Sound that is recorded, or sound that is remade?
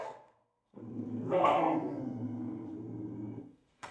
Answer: remade